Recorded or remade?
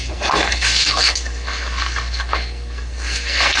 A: remade